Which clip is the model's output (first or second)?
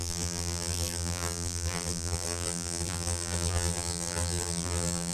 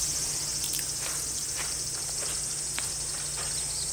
first